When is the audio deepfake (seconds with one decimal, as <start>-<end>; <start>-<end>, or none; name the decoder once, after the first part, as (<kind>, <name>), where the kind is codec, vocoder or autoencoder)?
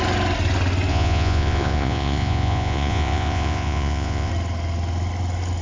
0.9-4.3 (vocoder, Vocos)